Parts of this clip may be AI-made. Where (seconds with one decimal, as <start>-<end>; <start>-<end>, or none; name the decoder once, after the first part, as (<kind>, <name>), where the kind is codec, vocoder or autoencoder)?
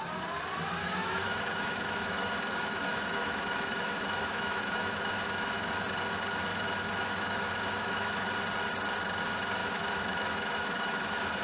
0.8-5.7 (autoencoder, DAC-VAE); 6.5-8.3; 9.6-11.4